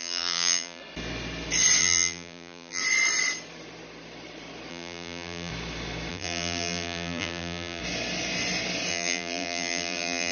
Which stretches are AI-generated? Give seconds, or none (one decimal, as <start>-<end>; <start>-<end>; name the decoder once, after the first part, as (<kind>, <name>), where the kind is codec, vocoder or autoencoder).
0.0-0.8 (vocoder, BigVGAN v2); 1.8-2.8; 4.7-5.5; 6.1-7.8; 8.9-10.3